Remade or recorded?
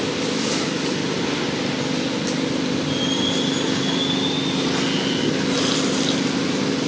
recorded